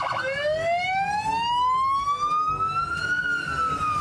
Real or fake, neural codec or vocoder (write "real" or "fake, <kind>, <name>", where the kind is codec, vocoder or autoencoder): real